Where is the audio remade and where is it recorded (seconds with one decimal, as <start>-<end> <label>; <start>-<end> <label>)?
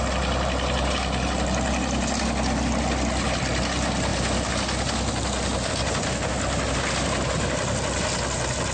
0.0-8.7 recorded